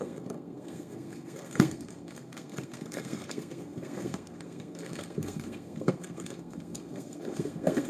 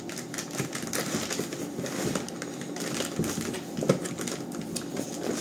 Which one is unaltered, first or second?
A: second